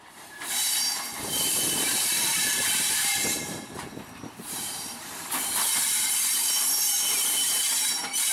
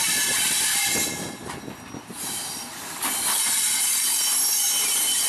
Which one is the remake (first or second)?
first